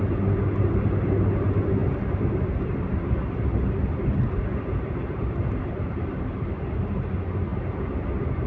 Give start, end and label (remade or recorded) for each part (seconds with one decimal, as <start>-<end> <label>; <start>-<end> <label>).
0.0-8.5 recorded

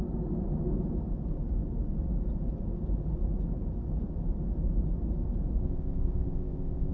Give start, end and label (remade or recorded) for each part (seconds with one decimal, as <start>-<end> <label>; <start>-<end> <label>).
0.0-5.6 recorded; 5.6-6.9 remade

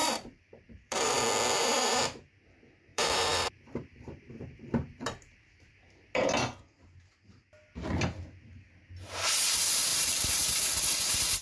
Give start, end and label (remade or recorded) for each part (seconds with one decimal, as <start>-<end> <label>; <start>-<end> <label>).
0.0-1.2 remade; 1.2-2.9 recorded; 2.9-5.7 remade; 5.7-9.9 recorded; 9.9-10.6 remade; 10.6-11.4 recorded

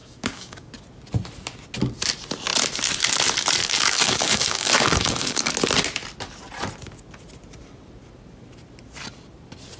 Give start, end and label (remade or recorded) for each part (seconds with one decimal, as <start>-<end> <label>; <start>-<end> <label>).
0.0-0.7 remade; 0.7-3.6 recorded; 3.6-5.5 remade; 5.5-9.8 recorded

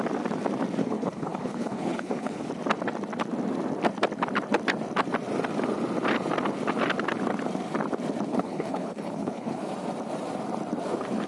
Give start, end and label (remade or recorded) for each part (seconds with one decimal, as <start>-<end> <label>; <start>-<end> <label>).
0.0-0.8 recorded; 0.8-2.5 remade; 2.5-8.3 recorded; 8.3-9.7 remade; 9.7-11.3 recorded

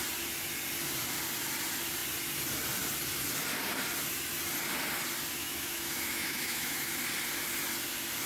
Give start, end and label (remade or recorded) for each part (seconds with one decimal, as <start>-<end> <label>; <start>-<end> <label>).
0.0-5.4 recorded; 5.4-6.9 remade; 6.9-8.3 recorded

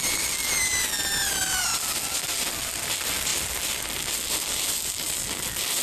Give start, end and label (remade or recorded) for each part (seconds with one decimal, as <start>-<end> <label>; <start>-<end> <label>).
0.0-5.8 recorded